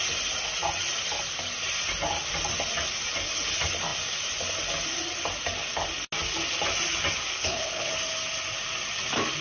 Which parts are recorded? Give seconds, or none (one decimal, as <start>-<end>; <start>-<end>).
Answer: 0.0-7.3; 7.9-9.4